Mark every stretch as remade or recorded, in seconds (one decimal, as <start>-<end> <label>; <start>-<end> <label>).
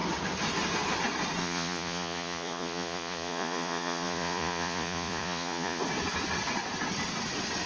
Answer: 0.0-1.4 recorded; 1.4-5.8 remade; 5.8-7.7 recorded